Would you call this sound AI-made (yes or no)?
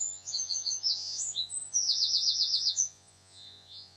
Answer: yes